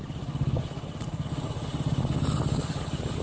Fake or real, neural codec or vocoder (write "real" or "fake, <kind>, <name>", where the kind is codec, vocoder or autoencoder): real